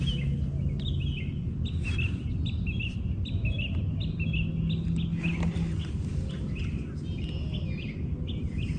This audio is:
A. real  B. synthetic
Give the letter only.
A